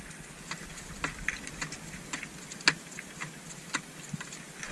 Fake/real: real